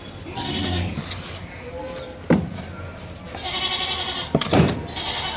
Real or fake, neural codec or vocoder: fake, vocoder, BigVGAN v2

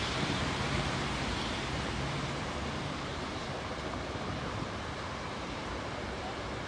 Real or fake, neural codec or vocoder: fake, vocoder, BigVGAN v2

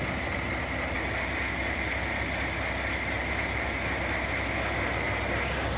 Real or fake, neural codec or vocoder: real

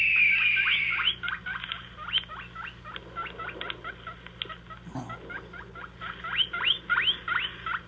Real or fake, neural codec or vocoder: real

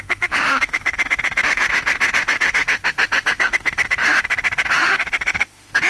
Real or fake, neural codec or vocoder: fake, autoencoder, DAC-VAE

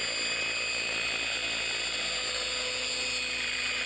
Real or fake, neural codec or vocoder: real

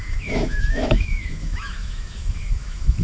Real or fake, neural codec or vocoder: fake, autoencoder, DAC-VAE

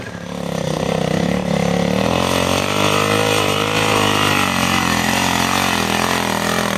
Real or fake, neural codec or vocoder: real